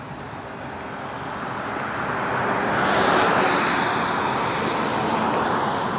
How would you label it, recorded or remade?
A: recorded